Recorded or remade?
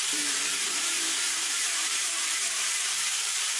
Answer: remade